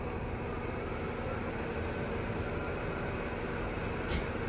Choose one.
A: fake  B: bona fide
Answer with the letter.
B